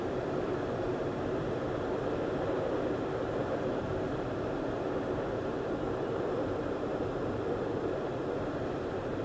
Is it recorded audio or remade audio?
remade